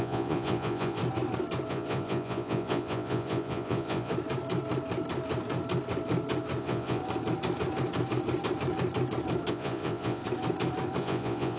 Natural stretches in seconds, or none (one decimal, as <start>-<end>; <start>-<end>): 1.0-1.7; 4.1-6.6; 7.0-9.5; 10.2-11.0